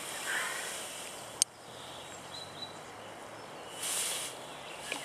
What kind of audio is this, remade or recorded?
recorded